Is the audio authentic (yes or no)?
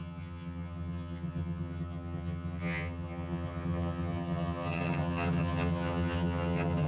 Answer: no